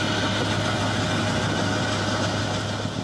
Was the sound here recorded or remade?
recorded